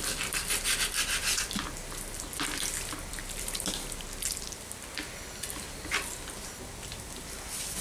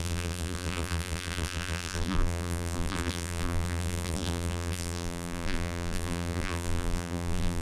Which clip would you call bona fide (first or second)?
first